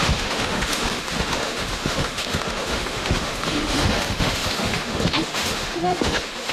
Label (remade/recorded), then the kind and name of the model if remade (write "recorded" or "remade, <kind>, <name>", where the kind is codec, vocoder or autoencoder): remade, autoencoder, DAC-VAE